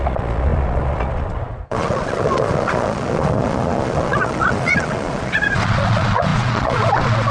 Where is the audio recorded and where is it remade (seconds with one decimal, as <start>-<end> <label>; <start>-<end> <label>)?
0.0-7.3 remade